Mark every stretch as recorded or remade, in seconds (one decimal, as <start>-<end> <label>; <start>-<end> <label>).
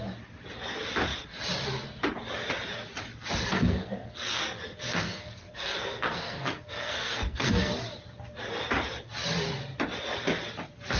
0.0-3.5 recorded; 3.5-4.4 remade; 4.4-4.9 recorded; 4.9-7.7 remade; 7.7-11.0 recorded